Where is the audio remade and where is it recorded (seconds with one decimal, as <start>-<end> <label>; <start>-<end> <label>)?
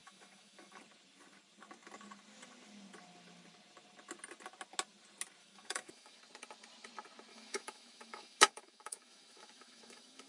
0.0-0.8 remade; 0.8-5.4 recorded; 5.4-6.2 remade; 6.2-7.3 recorded; 7.3-10.3 remade